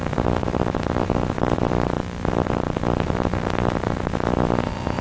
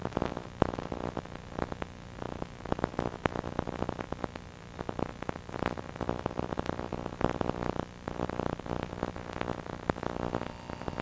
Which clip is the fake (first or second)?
first